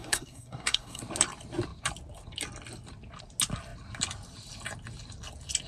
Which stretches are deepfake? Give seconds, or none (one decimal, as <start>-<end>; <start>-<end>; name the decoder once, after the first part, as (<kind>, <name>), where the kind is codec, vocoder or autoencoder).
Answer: 0.0-1.0 (codec, SNAC)